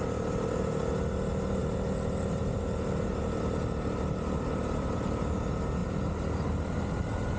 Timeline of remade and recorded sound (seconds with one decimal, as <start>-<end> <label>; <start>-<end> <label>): 0.0-7.4 recorded